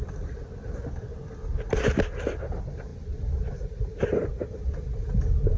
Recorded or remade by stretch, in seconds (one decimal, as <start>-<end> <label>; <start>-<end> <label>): 0.0-5.6 recorded